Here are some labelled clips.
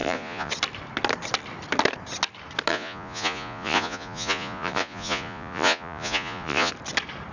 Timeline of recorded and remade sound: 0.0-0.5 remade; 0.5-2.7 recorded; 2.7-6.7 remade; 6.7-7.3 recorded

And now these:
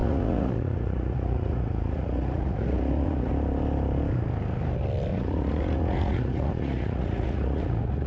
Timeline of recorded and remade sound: 0.0-3.3 remade; 3.3-5.1 recorded; 5.1-8.1 remade

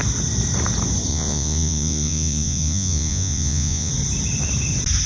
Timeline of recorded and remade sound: 0.0-1.1 recorded; 1.1-3.9 remade; 3.9-5.1 recorded

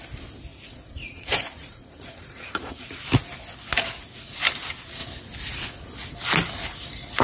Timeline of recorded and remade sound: 0.0-0.5 recorded; 0.5-3.0 remade; 3.0-7.2 recorded

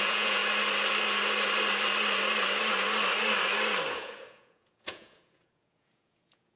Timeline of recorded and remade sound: 0.0-0.4 remade; 0.4-3.9 recorded; 3.9-6.6 remade

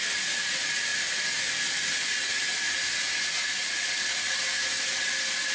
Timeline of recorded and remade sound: 0.0-3.4 recorded; 3.4-4.0 remade; 4.0-5.5 recorded